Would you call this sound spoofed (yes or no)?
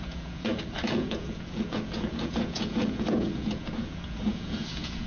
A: yes